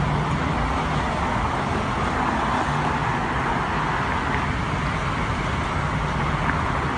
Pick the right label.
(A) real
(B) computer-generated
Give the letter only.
A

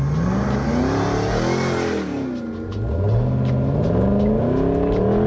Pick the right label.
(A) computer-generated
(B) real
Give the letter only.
B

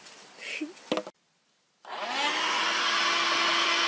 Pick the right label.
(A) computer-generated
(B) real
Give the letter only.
B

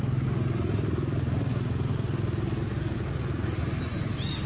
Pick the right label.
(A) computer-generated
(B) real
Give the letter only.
B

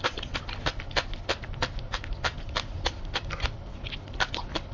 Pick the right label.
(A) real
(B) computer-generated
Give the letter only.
A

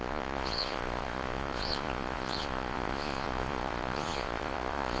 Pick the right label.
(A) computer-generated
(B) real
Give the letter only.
A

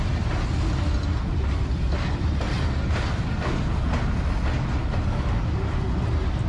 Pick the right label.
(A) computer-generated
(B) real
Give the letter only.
B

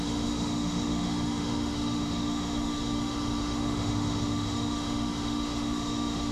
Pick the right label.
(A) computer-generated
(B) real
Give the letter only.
A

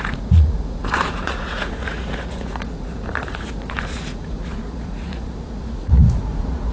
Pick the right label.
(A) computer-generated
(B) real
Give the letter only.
A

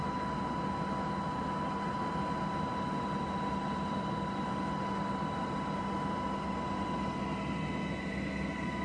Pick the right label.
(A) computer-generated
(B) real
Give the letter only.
B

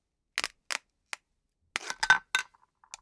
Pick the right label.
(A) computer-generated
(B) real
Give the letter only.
B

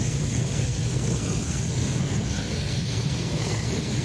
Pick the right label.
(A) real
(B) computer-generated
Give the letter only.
B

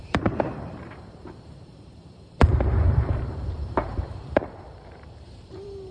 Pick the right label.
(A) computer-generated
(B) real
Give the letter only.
A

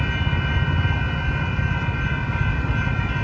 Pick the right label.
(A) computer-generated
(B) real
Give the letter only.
B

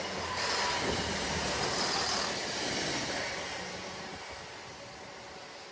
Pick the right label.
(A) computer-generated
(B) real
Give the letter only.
B